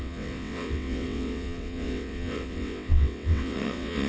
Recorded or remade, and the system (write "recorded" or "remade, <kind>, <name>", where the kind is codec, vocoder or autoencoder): remade, vocoder, WaveNeXt